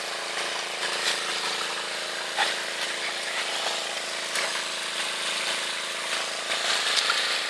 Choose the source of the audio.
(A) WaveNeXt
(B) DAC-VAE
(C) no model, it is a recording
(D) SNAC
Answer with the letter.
C